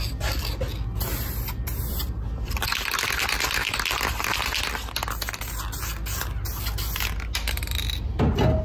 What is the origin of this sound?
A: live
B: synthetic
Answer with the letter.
A